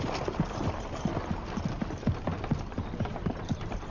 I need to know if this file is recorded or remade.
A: recorded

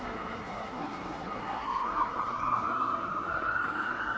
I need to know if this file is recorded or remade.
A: remade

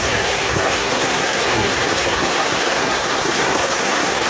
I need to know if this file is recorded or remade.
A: remade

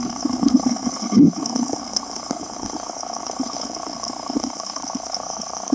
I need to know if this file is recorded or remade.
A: remade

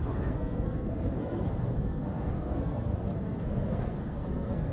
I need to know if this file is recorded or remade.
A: remade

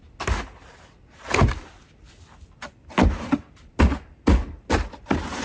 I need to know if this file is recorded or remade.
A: recorded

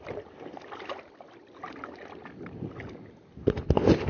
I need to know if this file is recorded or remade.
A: recorded